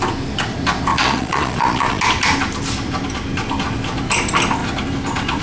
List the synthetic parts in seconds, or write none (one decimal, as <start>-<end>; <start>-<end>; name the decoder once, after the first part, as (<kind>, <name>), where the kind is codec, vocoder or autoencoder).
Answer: 0.9-2.0 (vocoder, Vocos)